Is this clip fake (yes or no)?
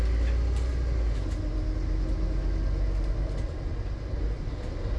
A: no